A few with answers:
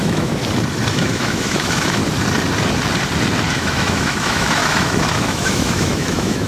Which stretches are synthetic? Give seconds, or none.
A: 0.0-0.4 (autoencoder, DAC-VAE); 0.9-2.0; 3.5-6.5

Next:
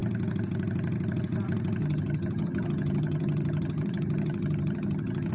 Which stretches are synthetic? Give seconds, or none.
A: 1.8-5.3 (vocoder, HiFi-GAN)

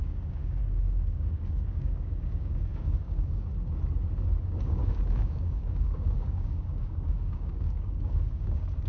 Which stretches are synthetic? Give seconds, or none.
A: 0.0-3.5 (codec, DAC); 4.4-8.9

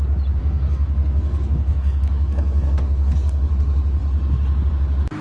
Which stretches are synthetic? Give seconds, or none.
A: 0.4-3.5 (codec, SNAC)

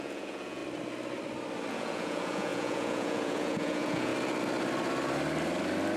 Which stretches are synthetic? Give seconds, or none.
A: 0.0-0.6 (vocoder, Vocos); 1.7-4.1

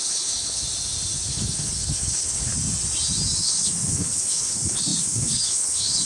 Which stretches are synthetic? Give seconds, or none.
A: 0.0-0.6 (codec, HILCodec); 1.3-2.5; 3.4-6.0

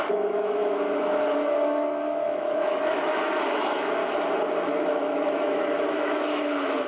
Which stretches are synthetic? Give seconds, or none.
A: 0.0-4.0 (autoencoder, DAC-VAE); 4.6-6.9